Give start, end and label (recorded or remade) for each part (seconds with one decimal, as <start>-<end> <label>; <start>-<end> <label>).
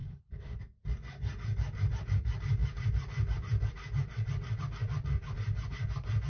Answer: 0.0-0.6 remade; 0.6-6.3 recorded